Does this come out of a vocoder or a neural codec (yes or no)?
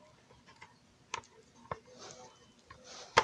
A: no